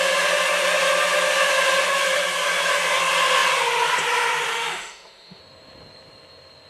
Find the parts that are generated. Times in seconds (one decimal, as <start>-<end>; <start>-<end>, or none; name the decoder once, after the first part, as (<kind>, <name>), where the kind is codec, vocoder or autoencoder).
4.5-5.4 (autoencoder, DAC-VAE)